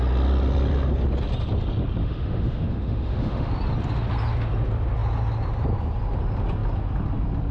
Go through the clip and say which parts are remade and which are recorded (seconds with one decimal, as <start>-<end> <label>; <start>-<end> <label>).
0.0-2.0 recorded; 2.0-3.5 remade; 3.5-7.5 recorded